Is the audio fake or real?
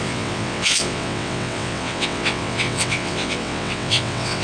fake